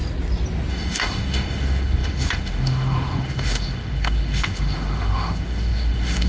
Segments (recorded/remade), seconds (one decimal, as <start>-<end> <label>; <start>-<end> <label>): 0.0-0.7 recorded; 0.7-6.3 remade